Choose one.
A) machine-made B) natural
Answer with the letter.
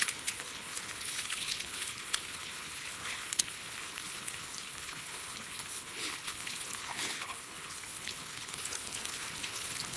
A